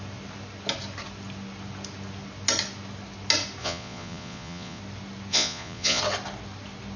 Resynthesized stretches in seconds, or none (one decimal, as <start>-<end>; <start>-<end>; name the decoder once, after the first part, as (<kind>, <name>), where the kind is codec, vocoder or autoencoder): 3.6-4.8 (vocoder, Vocos); 5.3-6.0